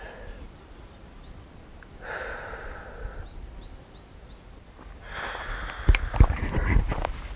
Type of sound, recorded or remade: recorded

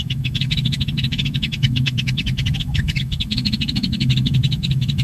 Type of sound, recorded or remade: remade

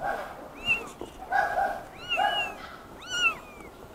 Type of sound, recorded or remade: recorded